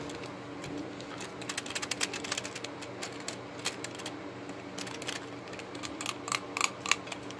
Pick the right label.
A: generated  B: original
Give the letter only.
B